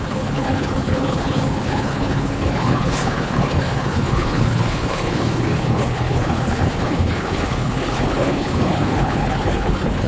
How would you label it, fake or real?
fake